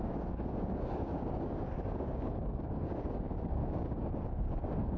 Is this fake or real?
fake